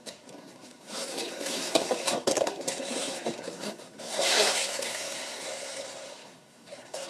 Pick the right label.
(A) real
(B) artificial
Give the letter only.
B